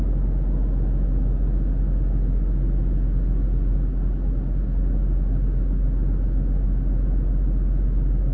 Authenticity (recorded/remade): recorded